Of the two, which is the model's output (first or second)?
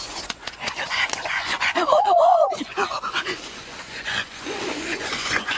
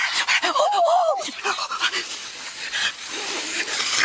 first